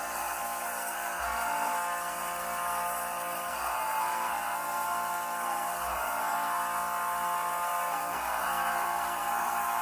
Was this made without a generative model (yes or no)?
no